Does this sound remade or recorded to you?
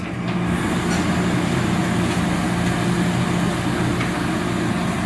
recorded